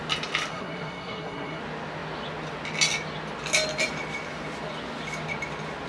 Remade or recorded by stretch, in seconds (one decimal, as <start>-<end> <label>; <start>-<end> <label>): 0.0-0.5 recorded; 0.5-1.6 remade; 1.6-5.9 recorded